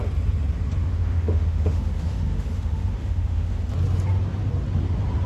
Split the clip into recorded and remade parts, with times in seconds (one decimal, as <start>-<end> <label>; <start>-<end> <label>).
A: 0.0-0.8 recorded; 0.8-3.6 remade; 3.6-5.3 recorded